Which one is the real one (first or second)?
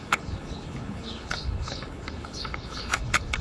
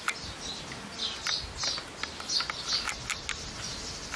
second